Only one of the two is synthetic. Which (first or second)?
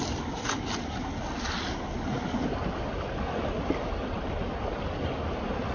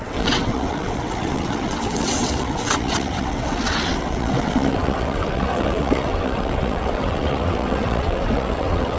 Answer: second